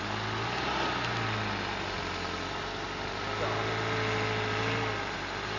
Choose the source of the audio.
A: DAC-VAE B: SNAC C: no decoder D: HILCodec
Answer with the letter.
C